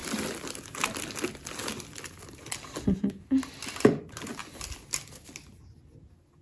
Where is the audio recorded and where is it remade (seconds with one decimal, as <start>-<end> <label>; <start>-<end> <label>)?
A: 0.0-6.4 recorded